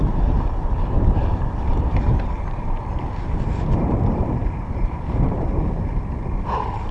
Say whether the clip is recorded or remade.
remade